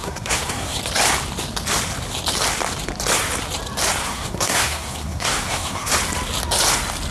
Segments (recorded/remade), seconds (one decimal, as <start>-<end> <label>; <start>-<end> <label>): 0.0-0.8 remade; 0.8-4.0 recorded; 4.0-5.9 remade; 5.9-7.1 recorded